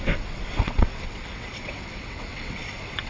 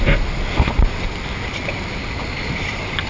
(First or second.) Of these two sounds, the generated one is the first